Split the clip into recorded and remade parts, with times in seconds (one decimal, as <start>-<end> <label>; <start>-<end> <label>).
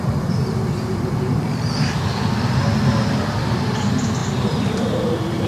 0.0-5.5 remade